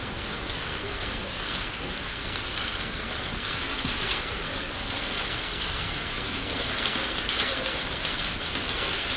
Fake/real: fake